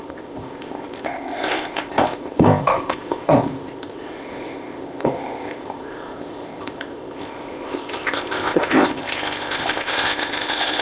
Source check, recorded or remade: remade